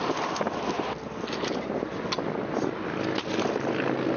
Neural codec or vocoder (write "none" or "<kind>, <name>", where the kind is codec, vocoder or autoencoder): none